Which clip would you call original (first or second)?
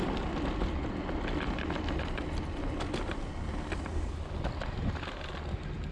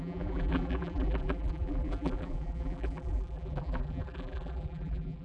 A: first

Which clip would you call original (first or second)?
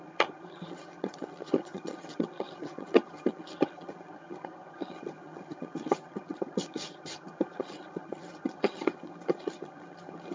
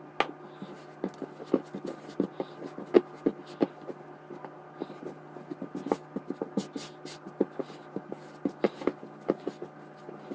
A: second